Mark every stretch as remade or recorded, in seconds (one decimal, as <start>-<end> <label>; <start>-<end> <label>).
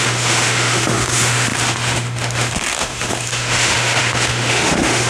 0.0-5.1 remade